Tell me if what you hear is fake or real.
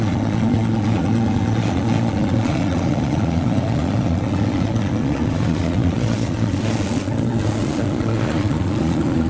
fake